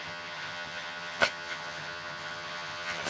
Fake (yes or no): yes